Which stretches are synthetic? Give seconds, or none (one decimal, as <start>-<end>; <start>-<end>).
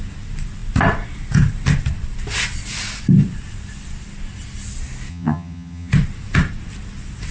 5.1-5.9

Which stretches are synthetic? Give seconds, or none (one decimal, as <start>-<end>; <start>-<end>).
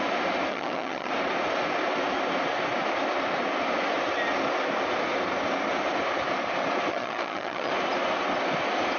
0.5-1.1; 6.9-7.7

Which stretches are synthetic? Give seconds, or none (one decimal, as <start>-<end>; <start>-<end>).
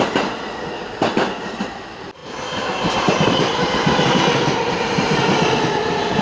none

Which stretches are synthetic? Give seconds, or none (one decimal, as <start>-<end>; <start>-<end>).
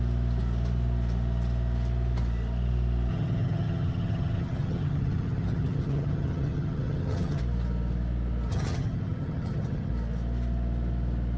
3.1-7.4; 8.5-9.9